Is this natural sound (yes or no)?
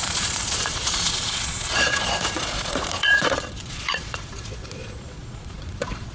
no